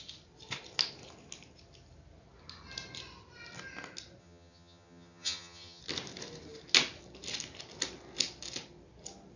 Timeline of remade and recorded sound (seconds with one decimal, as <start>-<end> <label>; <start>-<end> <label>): 0.0-4.2 recorded; 4.2-5.8 remade; 5.8-9.4 recorded